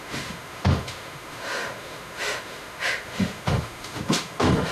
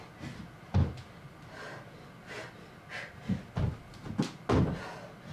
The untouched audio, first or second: second